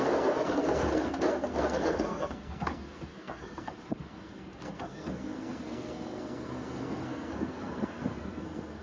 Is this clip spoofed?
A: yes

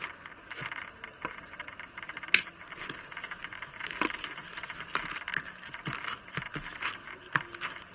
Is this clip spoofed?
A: no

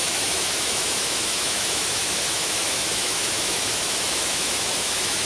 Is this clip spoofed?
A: yes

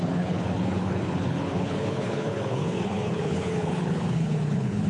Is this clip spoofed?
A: yes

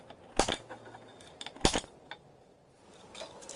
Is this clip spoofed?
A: no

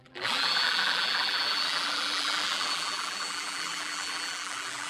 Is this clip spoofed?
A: yes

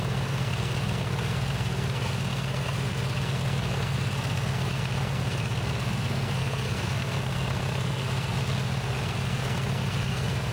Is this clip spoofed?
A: yes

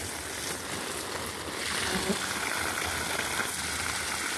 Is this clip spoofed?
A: no